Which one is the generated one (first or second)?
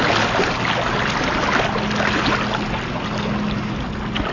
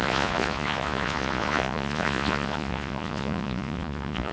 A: second